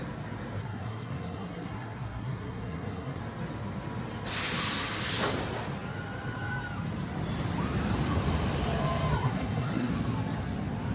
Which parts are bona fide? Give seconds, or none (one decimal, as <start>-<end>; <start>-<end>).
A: 0.0-0.6; 3.2-9.1; 9.9-10.9